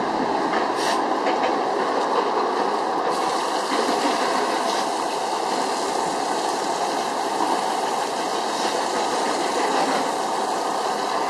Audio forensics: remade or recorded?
recorded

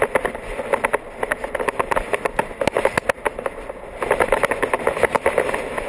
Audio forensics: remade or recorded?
recorded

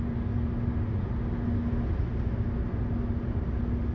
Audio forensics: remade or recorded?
recorded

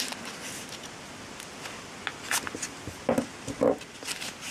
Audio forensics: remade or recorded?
recorded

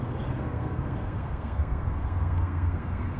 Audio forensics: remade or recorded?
remade